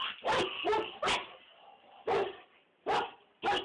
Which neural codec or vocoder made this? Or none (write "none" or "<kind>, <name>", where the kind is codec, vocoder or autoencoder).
none